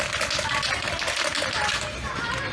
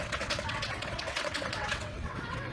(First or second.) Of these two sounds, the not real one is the second